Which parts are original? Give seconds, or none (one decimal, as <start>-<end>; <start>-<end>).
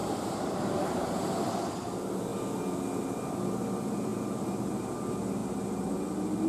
0.5-6.5